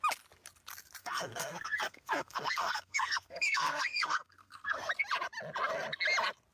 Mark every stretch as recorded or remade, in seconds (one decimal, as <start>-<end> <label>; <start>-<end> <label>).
0.0-1.0 recorded; 1.0-4.9 remade; 4.9-6.5 recorded